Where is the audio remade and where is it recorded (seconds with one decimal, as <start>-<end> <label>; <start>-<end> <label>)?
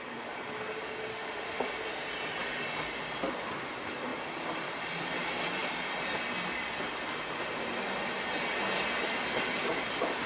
0.0-1.1 recorded; 1.1-1.7 remade; 1.7-10.3 recorded